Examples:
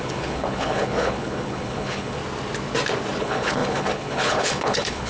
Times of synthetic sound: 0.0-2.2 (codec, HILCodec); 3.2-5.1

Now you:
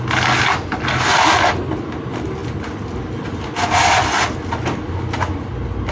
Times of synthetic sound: none

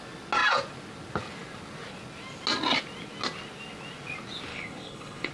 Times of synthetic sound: 4.5-5.3 (codec, HILCodec)

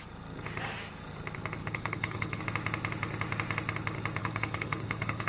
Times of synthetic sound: 1.6-2.4 (codec, HILCodec); 4.2-5.3

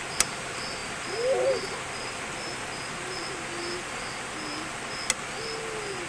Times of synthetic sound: none

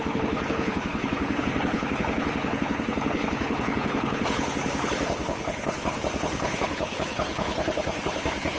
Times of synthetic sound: 0.0-8.6 (codec, HILCodec)